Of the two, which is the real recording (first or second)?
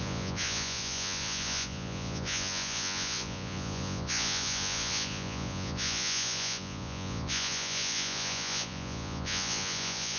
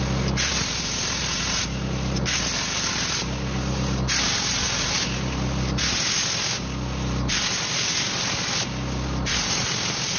second